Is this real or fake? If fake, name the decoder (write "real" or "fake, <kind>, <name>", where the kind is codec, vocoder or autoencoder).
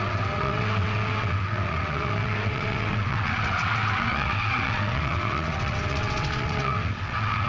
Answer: fake, vocoder, WaveNeXt